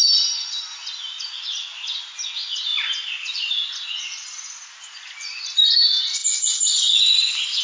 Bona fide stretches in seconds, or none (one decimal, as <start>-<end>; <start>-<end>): 0.0-7.6